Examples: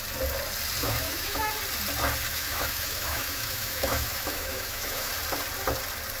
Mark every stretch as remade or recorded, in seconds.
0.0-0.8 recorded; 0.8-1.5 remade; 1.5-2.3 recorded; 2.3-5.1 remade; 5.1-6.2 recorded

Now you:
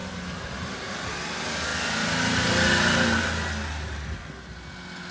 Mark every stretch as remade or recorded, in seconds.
0.0-1.1 remade; 1.1-5.1 recorded

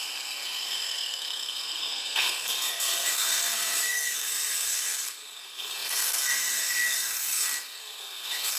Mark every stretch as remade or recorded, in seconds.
0.0-8.6 remade

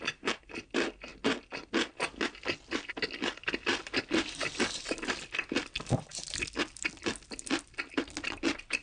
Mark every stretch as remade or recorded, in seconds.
0.0-8.8 recorded

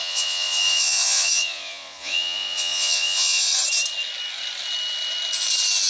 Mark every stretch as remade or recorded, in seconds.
0.0-3.5 remade; 3.5-5.9 recorded